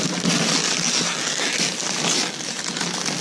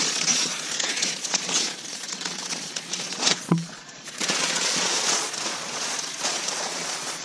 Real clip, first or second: first